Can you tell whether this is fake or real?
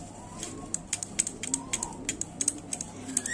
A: real